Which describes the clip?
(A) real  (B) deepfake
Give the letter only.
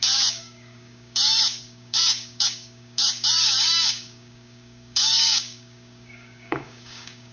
B